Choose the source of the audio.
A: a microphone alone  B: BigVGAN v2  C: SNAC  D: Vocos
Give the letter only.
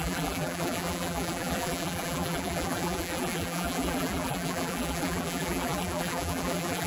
B